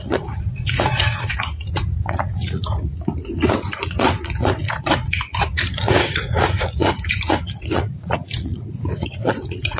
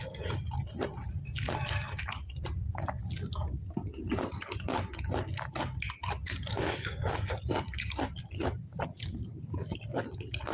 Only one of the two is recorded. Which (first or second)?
second